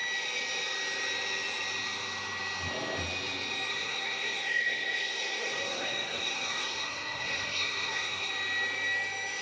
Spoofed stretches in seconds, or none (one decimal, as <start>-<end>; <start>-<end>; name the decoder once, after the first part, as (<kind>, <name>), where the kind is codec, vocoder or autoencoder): 3.7-8.3 (codec, SNAC)